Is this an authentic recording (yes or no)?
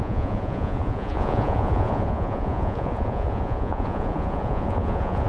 no